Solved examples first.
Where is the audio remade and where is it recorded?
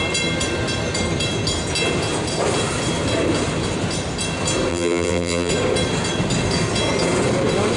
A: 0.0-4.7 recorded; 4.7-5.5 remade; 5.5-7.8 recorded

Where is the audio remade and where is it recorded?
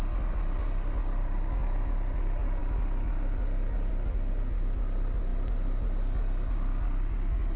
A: 0.0-7.6 recorded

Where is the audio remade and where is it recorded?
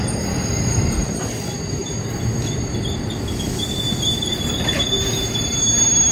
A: 0.0-6.1 recorded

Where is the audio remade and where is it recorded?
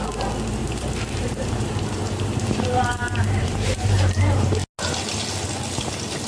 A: 0.0-0.6 recorded; 0.6-4.4 remade; 4.4-6.3 recorded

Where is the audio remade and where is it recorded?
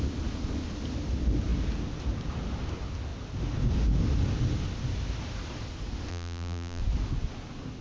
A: 0.0-6.1 recorded; 6.1-6.8 remade; 6.8-7.8 recorded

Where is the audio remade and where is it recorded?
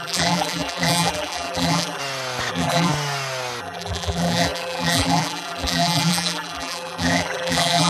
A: 0.0-2.0 remade; 2.0-2.5 recorded; 2.5-2.9 remade; 2.9-3.6 recorded; 3.6-7.9 remade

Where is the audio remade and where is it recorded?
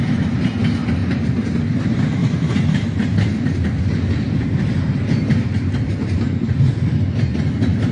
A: 0.0-1.0 recorded; 1.0-1.6 remade; 1.6-2.2 recorded; 2.2-6.7 remade; 6.7-7.9 recorded